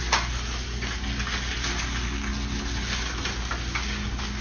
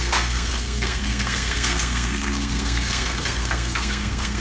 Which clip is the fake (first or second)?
second